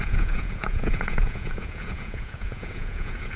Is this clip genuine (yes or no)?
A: no